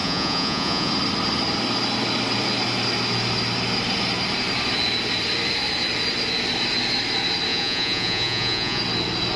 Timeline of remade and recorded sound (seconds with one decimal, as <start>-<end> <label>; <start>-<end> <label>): 0.0-0.9 remade; 0.9-7.5 recorded; 7.5-8.8 remade; 8.8-9.4 recorded